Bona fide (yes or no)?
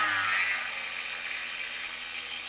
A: yes